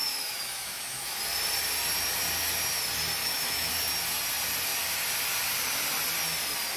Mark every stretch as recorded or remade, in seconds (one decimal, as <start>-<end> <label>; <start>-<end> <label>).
0.0-1.2 remade; 1.2-3.2 recorded; 3.2-3.7 remade; 3.7-6.8 recorded